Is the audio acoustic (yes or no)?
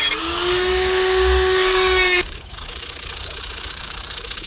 no